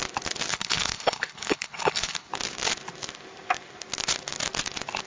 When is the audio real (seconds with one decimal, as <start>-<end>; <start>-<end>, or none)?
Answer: 0.0-0.5; 2.3-5.1